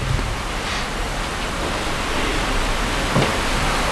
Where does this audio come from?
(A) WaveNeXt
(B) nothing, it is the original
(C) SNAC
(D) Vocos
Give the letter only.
B